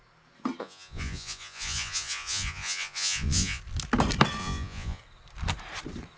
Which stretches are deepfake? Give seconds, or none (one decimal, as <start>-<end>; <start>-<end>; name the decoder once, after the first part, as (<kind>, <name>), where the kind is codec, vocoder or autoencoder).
0.6-3.6 (vocoder, Vocos); 4.4-5.0